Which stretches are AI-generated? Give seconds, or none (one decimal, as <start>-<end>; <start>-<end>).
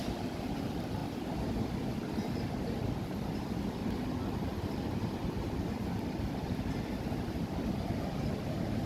0.0-1.0; 2.1-3.8